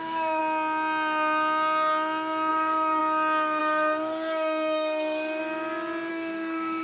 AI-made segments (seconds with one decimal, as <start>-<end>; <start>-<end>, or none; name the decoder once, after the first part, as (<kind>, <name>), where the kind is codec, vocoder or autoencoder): 0.0-0.4 (codec, DAC); 2.5-3.0; 3.6-5.4; 6.1-6.8